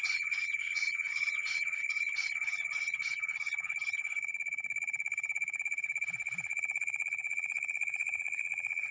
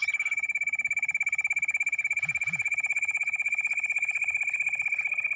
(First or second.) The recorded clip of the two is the second